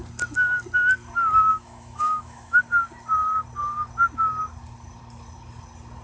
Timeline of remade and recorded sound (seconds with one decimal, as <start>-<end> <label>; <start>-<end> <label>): 0.0-1.5 recorded; 1.5-2.6 remade; 2.6-6.0 recorded